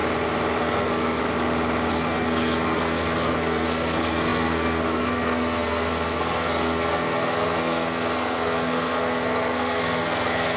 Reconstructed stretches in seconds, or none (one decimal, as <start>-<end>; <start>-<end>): 0.6-1.2; 1.9-10.6